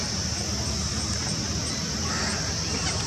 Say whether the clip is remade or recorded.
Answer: recorded